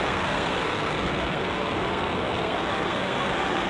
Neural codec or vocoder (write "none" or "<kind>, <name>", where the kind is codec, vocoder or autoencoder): codec, SNAC